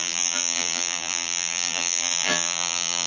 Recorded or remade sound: remade